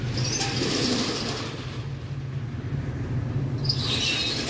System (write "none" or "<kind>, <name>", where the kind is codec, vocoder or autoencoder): none